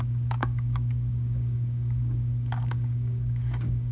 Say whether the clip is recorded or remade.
remade